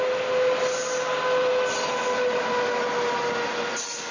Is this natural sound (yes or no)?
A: yes